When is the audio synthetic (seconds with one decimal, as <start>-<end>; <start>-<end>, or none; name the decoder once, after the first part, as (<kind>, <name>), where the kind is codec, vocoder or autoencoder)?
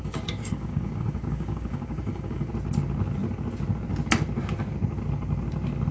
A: 0.0-2.5 (codec, DAC)